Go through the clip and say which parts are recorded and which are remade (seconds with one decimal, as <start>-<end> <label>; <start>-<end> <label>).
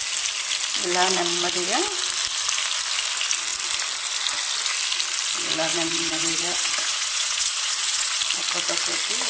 0.0-5.7 recorded; 5.7-8.2 remade; 8.2-9.3 recorded